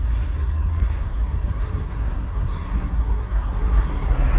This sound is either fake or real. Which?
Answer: fake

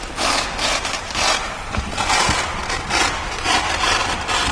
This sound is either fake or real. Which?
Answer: real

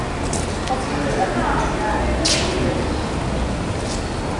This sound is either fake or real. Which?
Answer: real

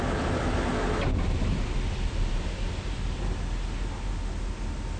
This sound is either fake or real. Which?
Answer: real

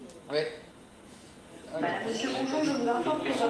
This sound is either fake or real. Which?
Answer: fake